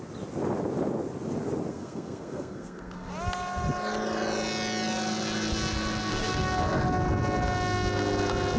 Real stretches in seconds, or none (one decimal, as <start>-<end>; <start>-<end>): 0.0-1.7; 3.1-6.1; 6.6-8.6